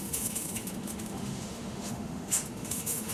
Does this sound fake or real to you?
fake